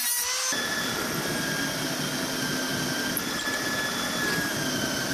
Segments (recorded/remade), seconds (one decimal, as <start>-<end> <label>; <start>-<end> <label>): 0.0-5.1 recorded